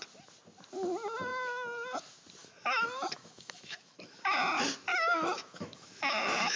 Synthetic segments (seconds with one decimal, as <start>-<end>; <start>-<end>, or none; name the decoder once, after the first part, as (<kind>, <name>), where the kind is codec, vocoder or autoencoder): 2.4-4.2 (autoencoder, DAC-VAE); 4.9-6.6